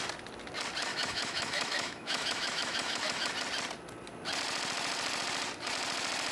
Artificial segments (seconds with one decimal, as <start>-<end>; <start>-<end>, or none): 0.9-3.3